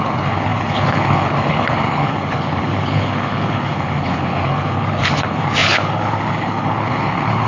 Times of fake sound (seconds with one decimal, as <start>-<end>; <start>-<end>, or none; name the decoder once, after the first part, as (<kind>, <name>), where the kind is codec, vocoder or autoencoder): 0.0-7.5 (codec, HILCodec)